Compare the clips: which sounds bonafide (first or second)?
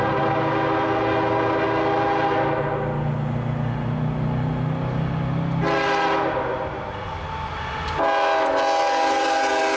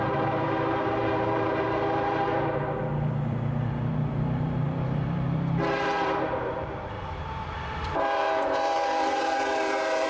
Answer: first